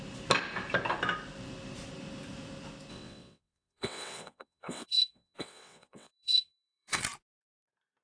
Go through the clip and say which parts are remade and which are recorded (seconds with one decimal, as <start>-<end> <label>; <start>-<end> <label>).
0.0-2.9 recorded; 2.9-7.0 remade; 7.0-8.0 recorded